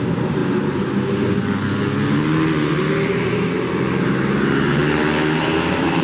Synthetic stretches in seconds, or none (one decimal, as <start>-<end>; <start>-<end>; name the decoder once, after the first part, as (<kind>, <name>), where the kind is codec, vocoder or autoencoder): 0.0-0.4 (vocoder, BigVGAN v2); 4.0-4.8; 5.4-6.0